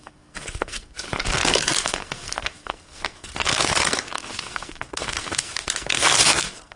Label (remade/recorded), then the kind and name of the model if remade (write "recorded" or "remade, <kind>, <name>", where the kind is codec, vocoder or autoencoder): remade, codec, SNAC